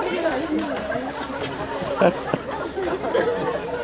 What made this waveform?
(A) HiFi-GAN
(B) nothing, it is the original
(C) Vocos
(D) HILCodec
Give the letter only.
B